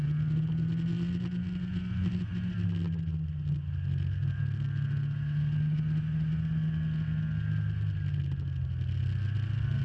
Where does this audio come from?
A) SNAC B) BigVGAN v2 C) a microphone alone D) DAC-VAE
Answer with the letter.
C